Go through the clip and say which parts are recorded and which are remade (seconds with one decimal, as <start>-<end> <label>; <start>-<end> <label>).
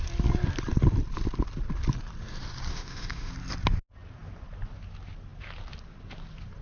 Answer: 0.0-2.7 recorded; 2.7-3.3 remade; 3.3-6.6 recorded